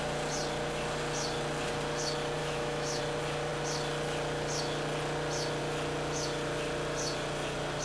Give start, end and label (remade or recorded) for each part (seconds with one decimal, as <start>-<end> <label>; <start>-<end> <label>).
0.0-2.4 recorded; 2.4-3.0 remade; 3.0-7.8 recorded